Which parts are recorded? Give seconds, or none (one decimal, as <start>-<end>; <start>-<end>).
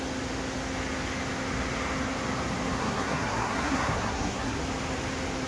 0.0-2.8; 4.6-5.5